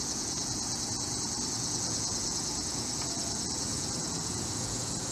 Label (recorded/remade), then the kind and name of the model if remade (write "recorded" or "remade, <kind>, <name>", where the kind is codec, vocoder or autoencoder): remade, vocoder, Vocos